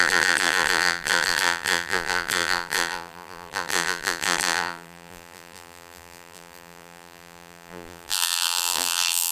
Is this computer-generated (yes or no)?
yes